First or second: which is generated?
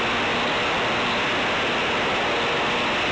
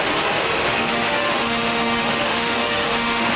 second